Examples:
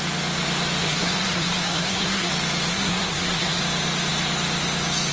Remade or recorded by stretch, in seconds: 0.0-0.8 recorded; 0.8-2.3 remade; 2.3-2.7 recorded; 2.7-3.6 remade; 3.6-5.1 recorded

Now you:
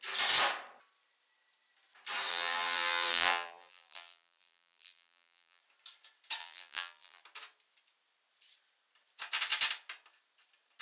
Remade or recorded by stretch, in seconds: 0.0-2.3 recorded; 2.3-5.6 remade; 5.6-6.4 recorded; 6.4-7.2 remade; 7.2-10.8 recorded

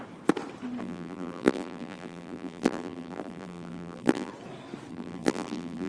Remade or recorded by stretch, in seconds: 0.0-0.8 recorded; 0.8-4.3 remade; 4.3-4.9 recorded; 4.9-5.9 remade

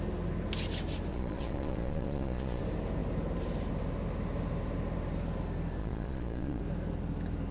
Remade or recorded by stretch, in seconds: 0.0-1.1 recorded; 1.1-2.6 remade; 2.6-5.8 recorded; 5.8-6.6 remade; 6.6-7.5 recorded

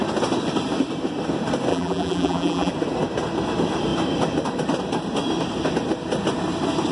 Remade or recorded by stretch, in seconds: 0.0-1.7 recorded; 1.7-2.7 remade; 2.7-6.9 recorded

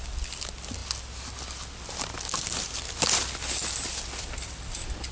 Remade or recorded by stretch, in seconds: 0.0-5.1 recorded